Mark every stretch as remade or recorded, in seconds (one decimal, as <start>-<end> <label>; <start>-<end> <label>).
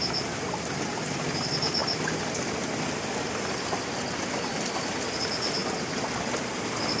0.0-7.0 recorded